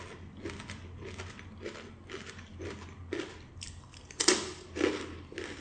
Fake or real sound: real